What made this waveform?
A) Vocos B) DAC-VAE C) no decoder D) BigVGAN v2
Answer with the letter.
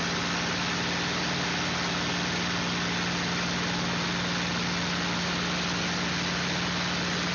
C